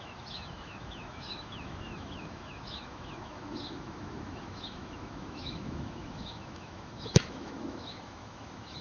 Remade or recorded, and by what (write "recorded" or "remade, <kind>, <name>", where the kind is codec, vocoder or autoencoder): remade, autoencoder, DAC-VAE